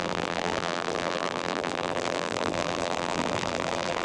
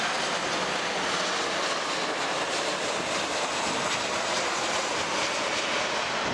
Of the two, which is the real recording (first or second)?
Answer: second